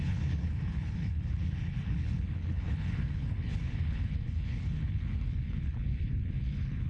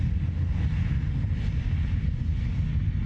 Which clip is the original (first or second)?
second